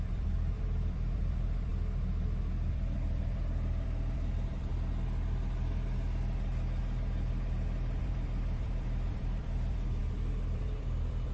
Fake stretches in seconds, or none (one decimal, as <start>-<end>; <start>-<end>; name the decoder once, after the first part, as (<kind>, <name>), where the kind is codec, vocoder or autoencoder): 0.0-1.7 (vocoder, BigVGAN v2); 2.7-4.7; 8.0-11.3